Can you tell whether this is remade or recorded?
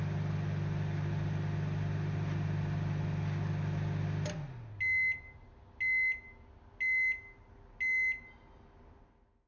recorded